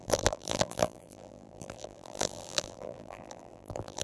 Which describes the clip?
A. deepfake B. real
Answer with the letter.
A